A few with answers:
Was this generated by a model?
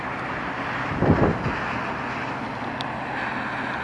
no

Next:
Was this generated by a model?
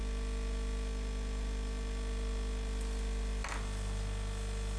no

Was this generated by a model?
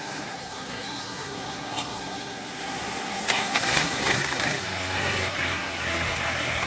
yes